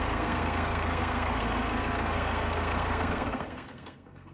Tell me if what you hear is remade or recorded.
remade